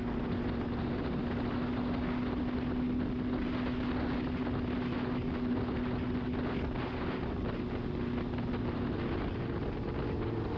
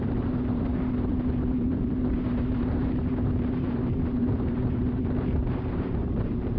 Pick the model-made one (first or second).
second